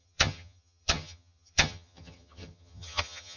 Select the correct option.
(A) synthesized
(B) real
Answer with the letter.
A